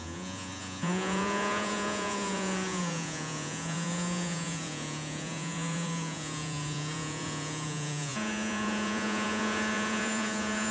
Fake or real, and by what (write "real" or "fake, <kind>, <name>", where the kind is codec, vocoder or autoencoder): fake, vocoder, Vocos